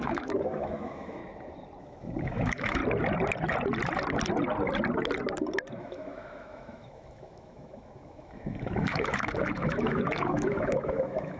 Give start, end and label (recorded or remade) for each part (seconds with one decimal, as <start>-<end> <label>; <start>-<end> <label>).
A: 0.0-1.2 remade; 1.2-1.8 recorded; 1.8-2.8 remade; 2.8-5.8 recorded; 5.8-11.4 remade